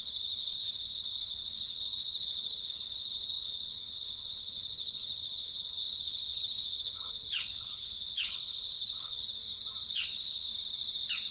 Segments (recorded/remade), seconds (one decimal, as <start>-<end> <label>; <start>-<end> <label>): 0.0-9.4 remade; 9.4-9.9 recorded; 9.9-10.5 remade; 10.5-11.3 recorded